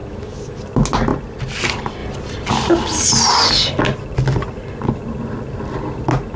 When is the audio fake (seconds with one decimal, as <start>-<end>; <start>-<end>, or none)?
0.0-0.6

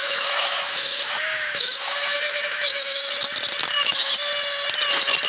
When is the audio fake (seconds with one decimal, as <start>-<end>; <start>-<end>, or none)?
0.0-3.1; 3.6-4.1

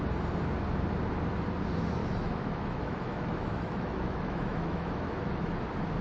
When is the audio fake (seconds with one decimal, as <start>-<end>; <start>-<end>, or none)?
2.0-5.6